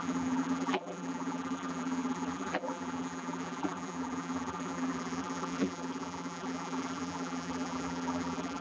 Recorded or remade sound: remade